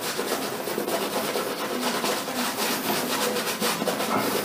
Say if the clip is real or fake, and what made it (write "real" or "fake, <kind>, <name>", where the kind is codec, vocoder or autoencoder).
real